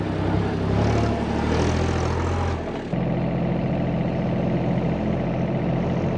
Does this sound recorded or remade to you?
recorded